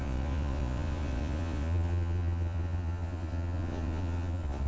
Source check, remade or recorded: remade